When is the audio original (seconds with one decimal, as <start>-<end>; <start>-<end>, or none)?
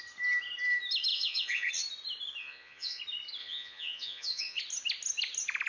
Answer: 0.0-1.1; 1.7-2.4; 3.0-3.4; 4.6-5.7